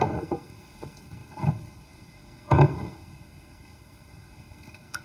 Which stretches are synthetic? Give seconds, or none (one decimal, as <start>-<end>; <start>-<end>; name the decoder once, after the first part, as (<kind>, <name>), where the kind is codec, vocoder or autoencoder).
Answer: 0.0-5.0 (codec, SNAC)

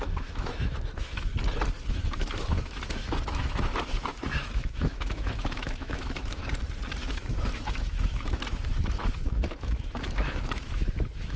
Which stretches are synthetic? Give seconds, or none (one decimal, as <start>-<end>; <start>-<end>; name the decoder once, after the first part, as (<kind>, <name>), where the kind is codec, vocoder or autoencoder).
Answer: 0.0-1.3 (autoencoder, DAC-VAE); 1.9-6.4; 7.0-11.4